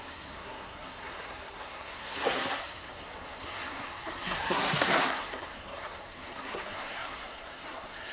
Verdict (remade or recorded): remade